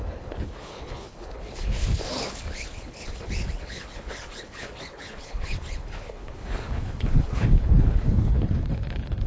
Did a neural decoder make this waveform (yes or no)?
yes